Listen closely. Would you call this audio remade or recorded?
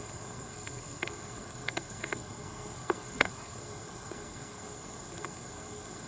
remade